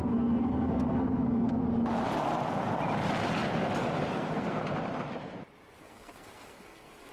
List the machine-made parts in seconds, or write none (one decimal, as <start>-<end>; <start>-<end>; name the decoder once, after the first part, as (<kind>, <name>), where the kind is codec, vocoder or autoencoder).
0.0-1.6 (codec, SNAC); 4.1-4.6; 5.8-7.1